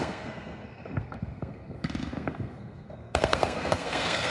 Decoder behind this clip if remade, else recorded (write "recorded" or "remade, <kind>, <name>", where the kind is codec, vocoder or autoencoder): remade, codec, SNAC